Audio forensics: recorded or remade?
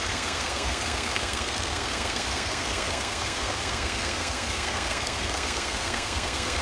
remade